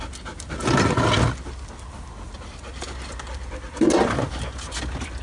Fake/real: real